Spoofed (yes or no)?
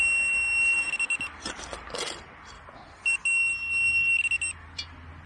no